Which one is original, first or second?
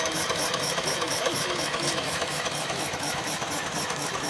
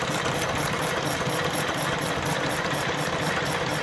second